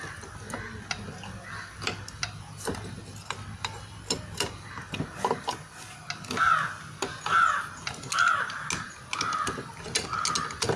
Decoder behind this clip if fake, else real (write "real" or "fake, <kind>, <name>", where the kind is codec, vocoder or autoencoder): real